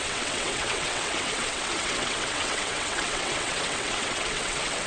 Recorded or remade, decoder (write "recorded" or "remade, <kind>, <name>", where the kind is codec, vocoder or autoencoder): remade, vocoder, WaveNeXt